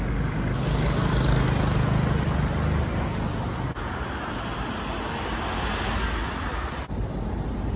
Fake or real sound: real